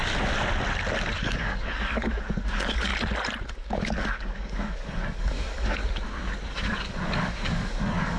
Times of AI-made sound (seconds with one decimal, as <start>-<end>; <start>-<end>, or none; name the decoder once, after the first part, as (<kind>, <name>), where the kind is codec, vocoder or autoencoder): 1.2-2.9 (codec, DAC); 3.5-5.8; 6.5-8.2